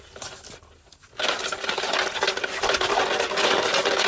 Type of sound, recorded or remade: recorded